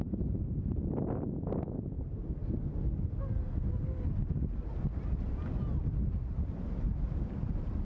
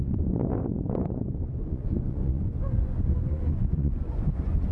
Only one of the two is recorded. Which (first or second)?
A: first